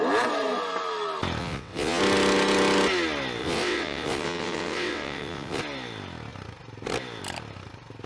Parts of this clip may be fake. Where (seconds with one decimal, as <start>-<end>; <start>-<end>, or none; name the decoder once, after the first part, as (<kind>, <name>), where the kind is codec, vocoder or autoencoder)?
1.4-2.0 (vocoder, WaveNeXt); 3.4-5.6